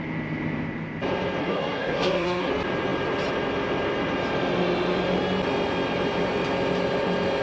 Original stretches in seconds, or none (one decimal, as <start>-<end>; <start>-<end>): 0.0-1.4; 2.5-7.4